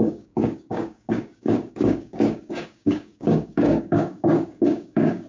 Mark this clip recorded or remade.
remade